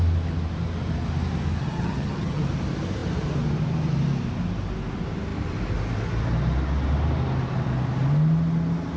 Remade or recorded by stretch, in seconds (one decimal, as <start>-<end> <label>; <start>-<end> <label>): 0.0-1.6 recorded; 1.6-2.4 remade; 2.4-9.0 recorded